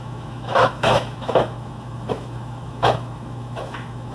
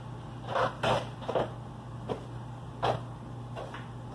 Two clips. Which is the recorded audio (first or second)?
second